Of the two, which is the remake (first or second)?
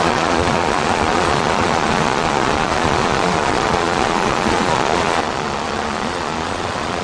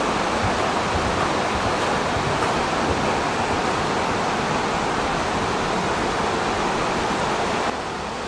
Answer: first